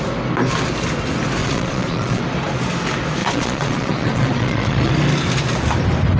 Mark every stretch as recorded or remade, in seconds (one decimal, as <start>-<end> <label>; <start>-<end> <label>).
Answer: 0.0-1.4 recorded; 1.4-2.2 remade; 2.2-3.2 recorded; 3.2-4.9 remade; 4.9-6.2 recorded